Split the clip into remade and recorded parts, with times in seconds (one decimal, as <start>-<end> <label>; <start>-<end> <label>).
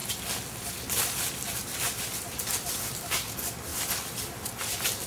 0.0-5.1 recorded